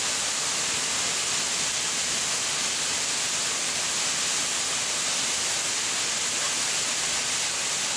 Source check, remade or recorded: recorded